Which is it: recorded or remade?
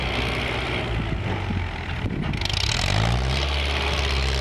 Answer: recorded